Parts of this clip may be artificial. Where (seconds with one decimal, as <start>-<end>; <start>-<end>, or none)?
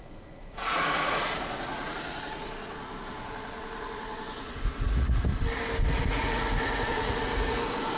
0.0-5.3; 5.9-8.0